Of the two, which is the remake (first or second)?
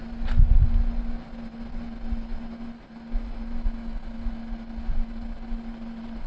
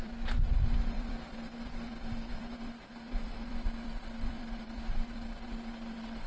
second